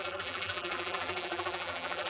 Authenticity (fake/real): fake